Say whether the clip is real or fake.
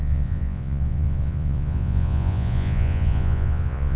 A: fake